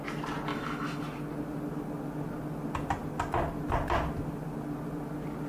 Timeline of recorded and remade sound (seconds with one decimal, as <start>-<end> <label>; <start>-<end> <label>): 0.0-0.5 recorded; 0.5-1.0 remade; 1.0-5.5 recorded